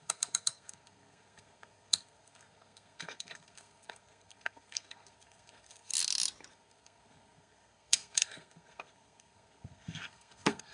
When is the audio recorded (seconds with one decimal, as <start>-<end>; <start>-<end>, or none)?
5.9-6.5